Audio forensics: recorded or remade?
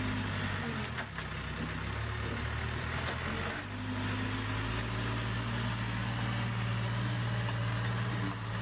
recorded